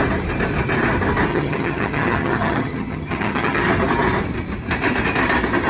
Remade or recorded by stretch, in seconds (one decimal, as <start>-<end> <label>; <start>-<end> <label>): 0.0-1.3 recorded; 1.3-3.6 remade; 3.6-5.7 recorded